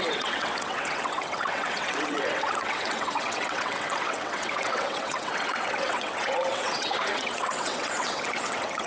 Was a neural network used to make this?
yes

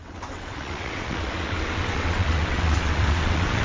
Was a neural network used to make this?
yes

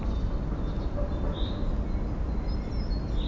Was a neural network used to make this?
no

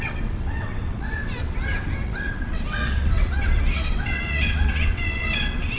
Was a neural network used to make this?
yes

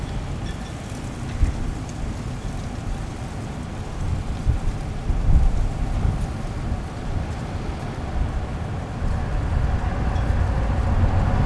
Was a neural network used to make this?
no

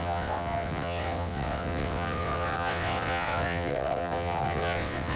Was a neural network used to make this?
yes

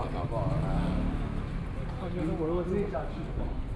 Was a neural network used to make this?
no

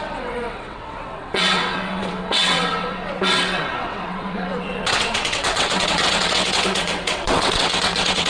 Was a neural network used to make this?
yes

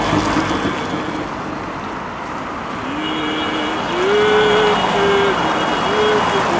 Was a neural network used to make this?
no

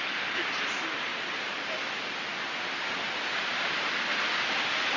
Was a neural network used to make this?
no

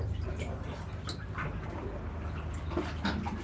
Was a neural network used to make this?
no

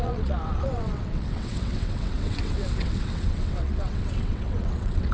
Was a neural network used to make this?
yes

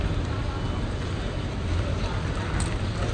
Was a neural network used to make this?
no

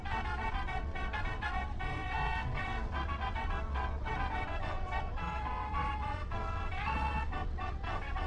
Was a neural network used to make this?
yes